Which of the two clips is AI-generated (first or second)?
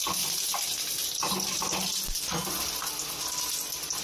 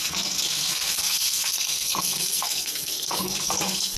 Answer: second